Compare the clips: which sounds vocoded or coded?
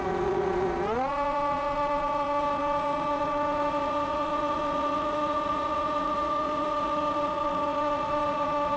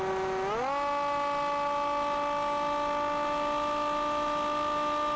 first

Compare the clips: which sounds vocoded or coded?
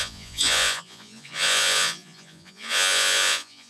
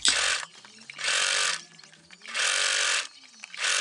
first